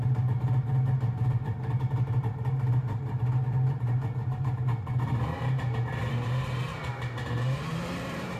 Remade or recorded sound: remade